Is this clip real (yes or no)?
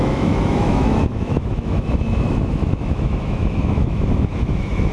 no